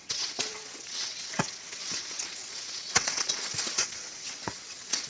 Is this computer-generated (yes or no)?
yes